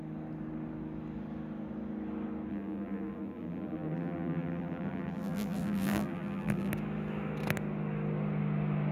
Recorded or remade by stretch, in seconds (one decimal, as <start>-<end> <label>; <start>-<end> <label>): 0.0-2.5 recorded; 2.5-6.7 remade; 6.7-8.9 recorded